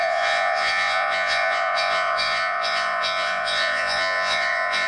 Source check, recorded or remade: remade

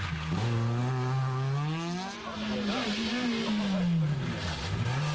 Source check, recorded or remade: recorded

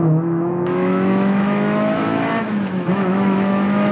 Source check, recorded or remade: remade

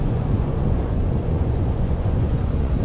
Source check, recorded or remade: remade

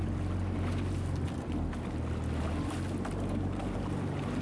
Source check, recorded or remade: recorded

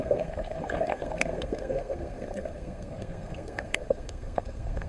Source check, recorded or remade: remade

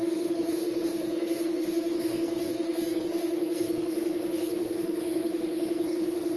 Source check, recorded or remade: remade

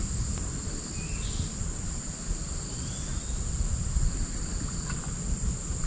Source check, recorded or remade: recorded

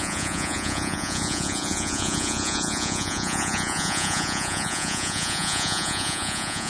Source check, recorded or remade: remade